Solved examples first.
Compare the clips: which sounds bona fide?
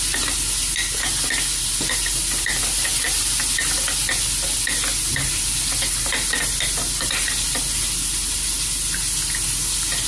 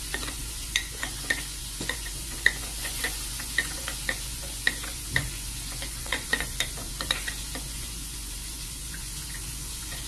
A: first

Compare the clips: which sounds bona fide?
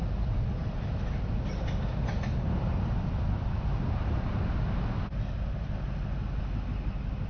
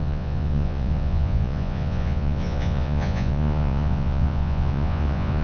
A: first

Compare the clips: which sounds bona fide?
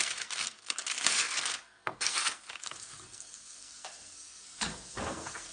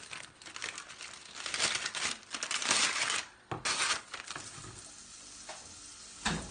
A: second